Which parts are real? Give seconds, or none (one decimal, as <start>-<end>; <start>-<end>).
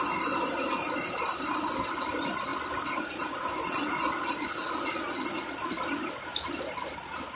0.0-7.4